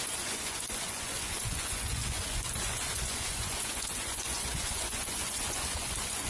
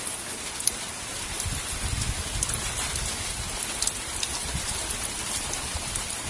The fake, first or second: first